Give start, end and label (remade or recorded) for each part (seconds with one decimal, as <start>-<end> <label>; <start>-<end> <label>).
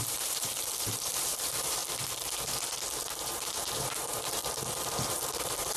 0.0-1.8 remade; 1.8-3.1 recorded; 3.1-4.4 remade; 4.4-5.0 recorded; 5.0-5.8 remade